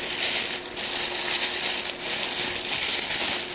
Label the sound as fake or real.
real